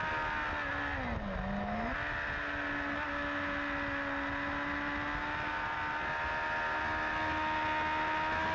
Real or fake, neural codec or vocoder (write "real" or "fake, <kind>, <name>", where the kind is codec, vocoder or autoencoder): real